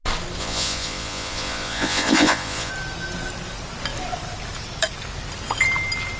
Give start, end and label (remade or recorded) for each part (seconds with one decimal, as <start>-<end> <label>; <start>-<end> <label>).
0.0-0.4 recorded; 0.4-2.7 remade; 2.7-6.2 recorded